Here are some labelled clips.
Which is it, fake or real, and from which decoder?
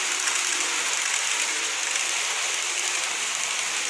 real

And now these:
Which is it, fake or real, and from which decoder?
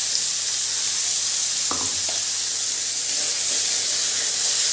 real